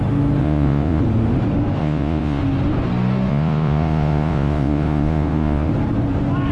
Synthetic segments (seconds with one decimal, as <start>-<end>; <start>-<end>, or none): 0.4-1.0; 1.8-2.4; 3.3-5.7